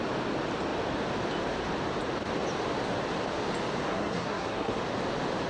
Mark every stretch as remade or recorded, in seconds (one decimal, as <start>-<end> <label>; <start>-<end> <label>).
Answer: 0.0-3.9 recorded; 3.9-4.8 remade; 4.8-5.5 recorded